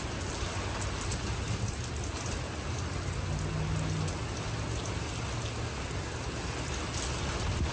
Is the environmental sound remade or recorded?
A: recorded